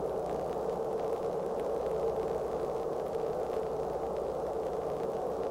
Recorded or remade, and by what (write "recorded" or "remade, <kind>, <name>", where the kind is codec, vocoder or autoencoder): recorded